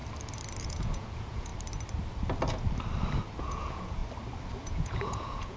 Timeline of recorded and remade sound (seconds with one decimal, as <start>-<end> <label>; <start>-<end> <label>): 0.0-0.6 recorded; 0.6-1.5 remade; 1.5-3.4 recorded; 3.4-4.0 remade; 4.0-4.5 recorded; 4.5-5.6 remade